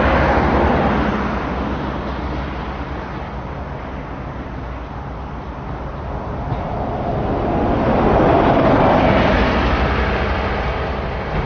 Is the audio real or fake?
real